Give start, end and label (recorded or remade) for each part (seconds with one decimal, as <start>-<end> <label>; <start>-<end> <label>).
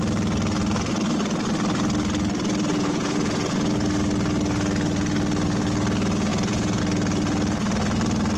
0.0-2.7 recorded; 2.7-3.7 remade; 3.7-6.3 recorded; 6.3-6.8 remade; 6.8-8.4 recorded